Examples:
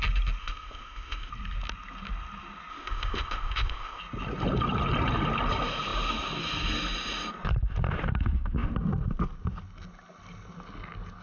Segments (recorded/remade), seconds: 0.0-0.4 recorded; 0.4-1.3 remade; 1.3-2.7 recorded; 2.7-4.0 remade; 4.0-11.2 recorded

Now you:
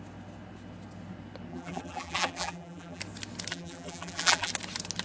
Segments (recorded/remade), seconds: 0.0-1.5 recorded; 1.5-3.0 remade; 3.0-3.5 recorded; 3.5-4.5 remade; 4.5-5.0 recorded